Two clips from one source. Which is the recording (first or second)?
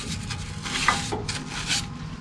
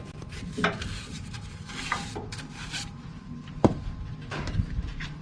first